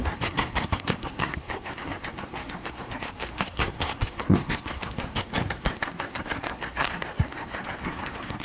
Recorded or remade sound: remade